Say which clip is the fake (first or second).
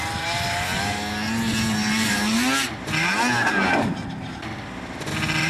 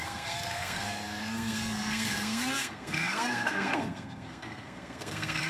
second